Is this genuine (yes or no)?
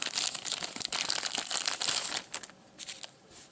yes